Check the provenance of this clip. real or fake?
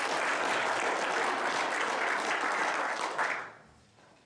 real